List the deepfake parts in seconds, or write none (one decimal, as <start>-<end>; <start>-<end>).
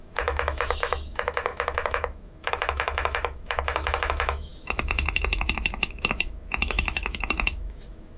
0.0-8.2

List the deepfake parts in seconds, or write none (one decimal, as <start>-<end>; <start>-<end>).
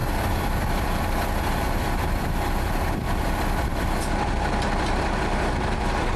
none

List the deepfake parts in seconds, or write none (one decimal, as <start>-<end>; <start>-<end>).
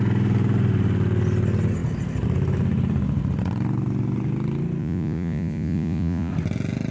4.8-6.3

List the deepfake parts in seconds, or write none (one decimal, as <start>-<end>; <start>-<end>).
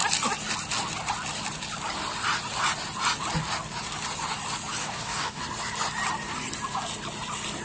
4.8-5.4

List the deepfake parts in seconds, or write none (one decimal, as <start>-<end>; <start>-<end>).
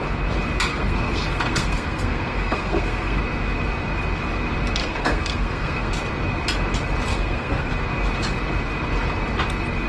0.7-3.2; 4.8-5.9; 7.1-7.7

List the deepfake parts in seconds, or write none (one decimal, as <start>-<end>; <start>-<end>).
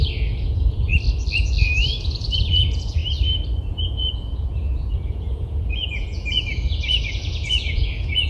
0.0-0.9; 2.0-3.0; 3.7-8.3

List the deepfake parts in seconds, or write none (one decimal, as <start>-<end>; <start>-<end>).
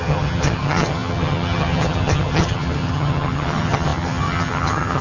0.0-5.0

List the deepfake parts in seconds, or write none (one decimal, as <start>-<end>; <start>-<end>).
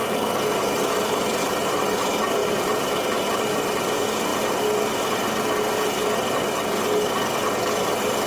none